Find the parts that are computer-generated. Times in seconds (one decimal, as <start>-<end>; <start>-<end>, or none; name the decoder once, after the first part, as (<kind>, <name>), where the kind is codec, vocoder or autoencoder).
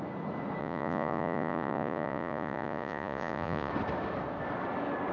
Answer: 0.6-3.7 (vocoder, Vocos)